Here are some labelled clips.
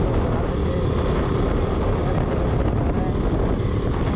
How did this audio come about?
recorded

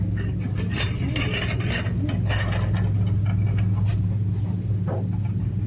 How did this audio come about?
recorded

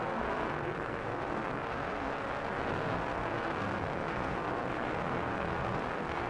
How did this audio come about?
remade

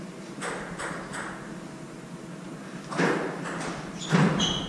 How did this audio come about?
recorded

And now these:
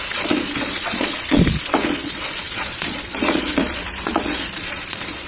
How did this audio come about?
remade